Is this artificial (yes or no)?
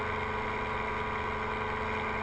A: no